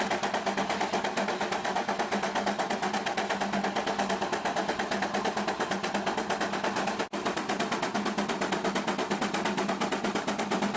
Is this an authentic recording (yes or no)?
yes